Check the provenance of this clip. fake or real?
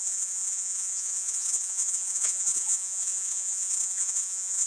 fake